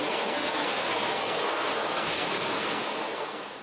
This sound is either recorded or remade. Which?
remade